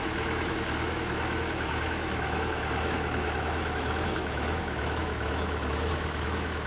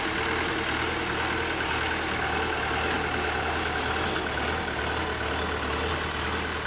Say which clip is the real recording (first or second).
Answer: second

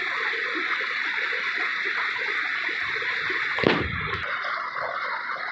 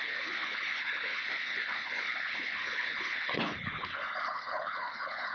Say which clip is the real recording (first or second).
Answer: first